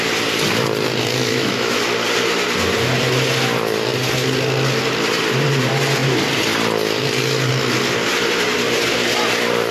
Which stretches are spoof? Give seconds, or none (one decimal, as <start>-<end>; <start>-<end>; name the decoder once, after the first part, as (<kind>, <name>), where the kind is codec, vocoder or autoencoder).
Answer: 1.3-1.8 (autoencoder, DAC-VAE)